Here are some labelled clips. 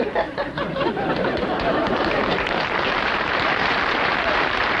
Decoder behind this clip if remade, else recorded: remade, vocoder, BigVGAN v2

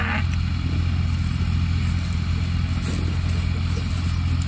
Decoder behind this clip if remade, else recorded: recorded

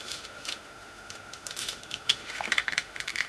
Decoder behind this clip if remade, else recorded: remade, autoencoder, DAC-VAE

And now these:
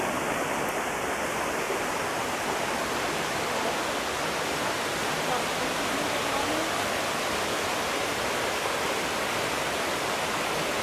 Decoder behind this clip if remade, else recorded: recorded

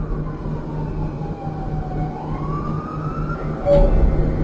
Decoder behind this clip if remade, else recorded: recorded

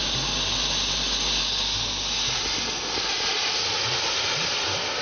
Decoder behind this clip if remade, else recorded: recorded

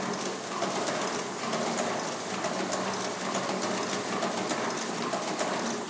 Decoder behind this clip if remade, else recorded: recorded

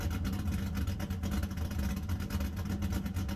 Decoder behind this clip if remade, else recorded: recorded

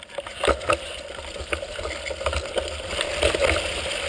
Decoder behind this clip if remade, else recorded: recorded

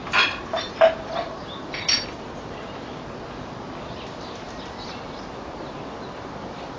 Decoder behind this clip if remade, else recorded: recorded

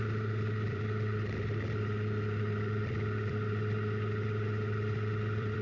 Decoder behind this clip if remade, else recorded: remade, vocoder, BigVGAN v2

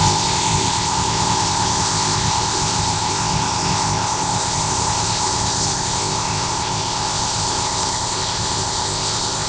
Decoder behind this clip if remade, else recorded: remade, codec, ZipCodec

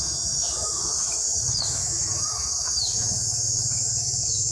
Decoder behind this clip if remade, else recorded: remade, autoencoder, DAC-VAE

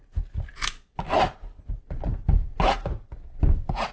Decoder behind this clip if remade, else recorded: recorded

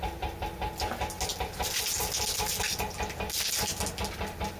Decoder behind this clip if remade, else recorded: recorded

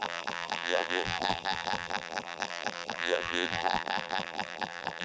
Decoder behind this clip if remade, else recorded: remade, vocoder, BigVGAN v2